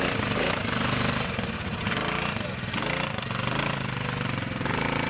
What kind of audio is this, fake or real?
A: real